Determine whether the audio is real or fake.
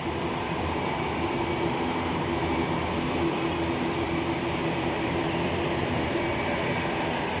fake